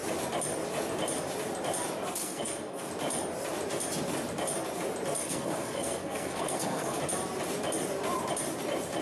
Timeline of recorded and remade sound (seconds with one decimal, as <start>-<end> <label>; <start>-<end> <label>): 0.0-2.2 recorded; 2.2-2.9 remade; 2.9-5.2 recorded; 5.2-7.0 remade; 7.0-9.0 recorded